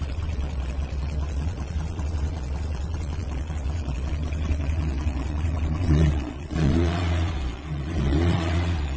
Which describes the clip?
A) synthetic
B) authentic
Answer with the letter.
A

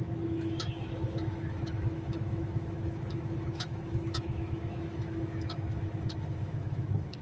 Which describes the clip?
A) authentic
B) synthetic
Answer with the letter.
B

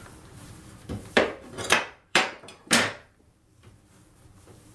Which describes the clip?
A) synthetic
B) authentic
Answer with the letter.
A